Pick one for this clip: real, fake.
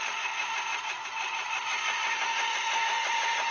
real